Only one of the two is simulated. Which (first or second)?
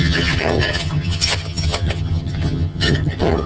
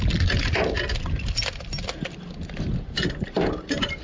first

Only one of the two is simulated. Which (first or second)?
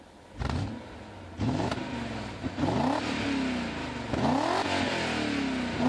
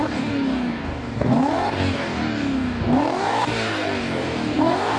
second